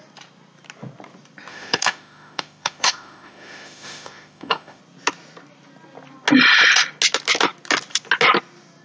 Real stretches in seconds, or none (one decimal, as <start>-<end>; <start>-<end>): 0.0-1.5; 4.8-8.8